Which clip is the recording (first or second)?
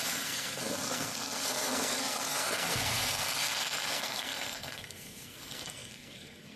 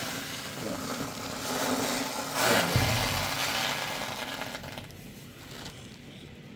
second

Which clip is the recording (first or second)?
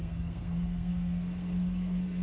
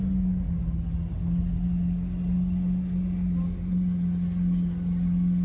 second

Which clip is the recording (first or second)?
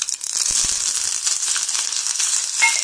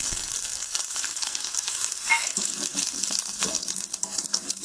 first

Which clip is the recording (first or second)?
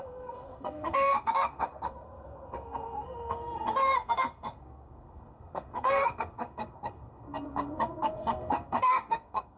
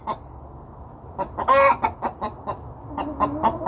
second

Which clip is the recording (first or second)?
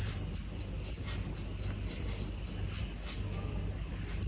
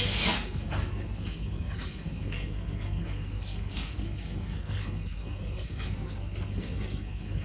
first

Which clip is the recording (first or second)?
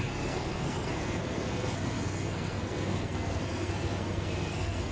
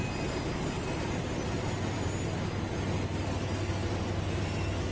second